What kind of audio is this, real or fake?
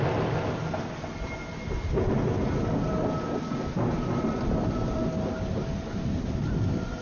real